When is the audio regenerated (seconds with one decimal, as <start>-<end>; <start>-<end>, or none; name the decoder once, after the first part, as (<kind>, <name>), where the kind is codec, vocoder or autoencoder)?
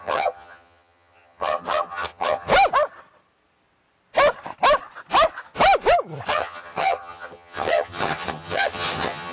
0.0-2.5 (vocoder, HiFi-GAN); 6.3-9.3